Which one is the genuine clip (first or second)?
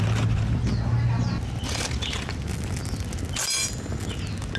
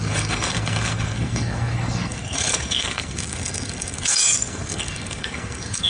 first